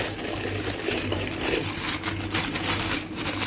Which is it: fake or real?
fake